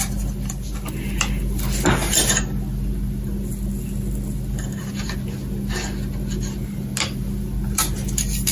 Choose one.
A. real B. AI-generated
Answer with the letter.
A